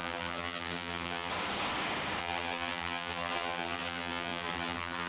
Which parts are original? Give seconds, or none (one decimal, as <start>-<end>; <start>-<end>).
1.3-2.2